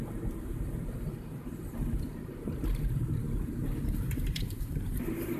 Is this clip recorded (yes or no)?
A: no